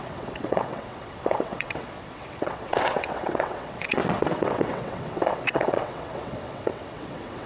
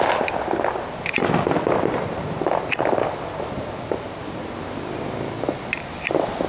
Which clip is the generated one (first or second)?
first